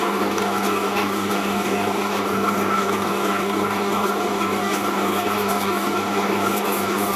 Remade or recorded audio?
remade